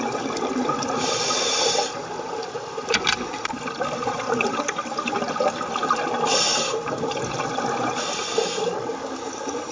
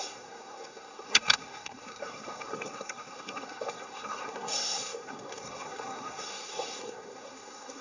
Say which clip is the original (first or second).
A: first